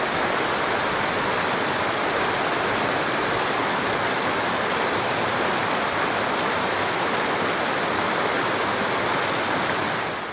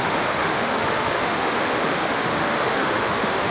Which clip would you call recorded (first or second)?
first